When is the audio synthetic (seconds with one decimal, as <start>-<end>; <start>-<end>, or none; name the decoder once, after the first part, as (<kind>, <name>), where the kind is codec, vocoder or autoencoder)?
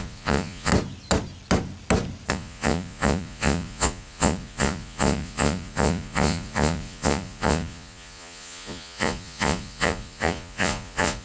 0.0-0.7 (vocoder, Vocos); 2.3-11.2